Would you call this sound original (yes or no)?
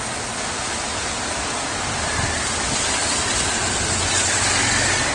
yes